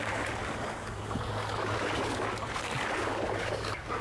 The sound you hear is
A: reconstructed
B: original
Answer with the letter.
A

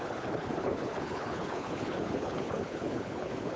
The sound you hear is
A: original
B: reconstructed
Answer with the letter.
B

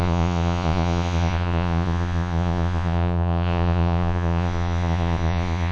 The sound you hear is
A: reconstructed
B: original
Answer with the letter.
A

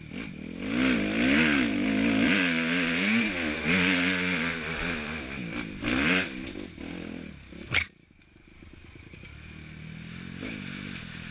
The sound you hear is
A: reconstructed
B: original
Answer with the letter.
B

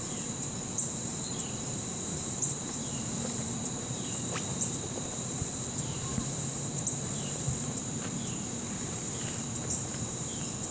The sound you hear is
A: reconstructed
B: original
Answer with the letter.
A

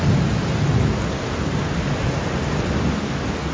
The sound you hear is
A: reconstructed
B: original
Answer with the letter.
B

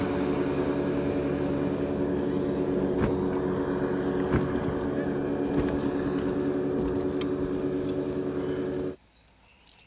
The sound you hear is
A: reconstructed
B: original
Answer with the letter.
B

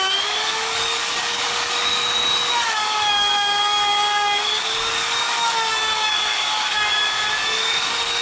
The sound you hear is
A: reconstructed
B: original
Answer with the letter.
A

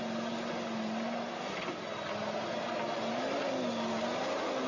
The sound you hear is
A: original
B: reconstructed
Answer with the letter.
A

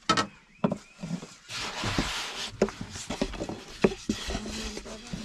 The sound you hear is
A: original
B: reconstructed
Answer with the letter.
A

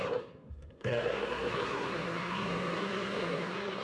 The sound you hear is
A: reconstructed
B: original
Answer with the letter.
A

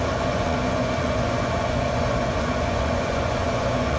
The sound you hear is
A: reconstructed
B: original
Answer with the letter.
A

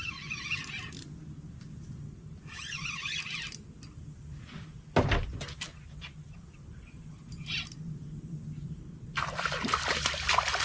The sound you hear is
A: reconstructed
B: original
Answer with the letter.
B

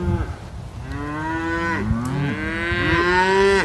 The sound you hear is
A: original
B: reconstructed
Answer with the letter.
A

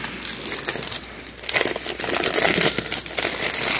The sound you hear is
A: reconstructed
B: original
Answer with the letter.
B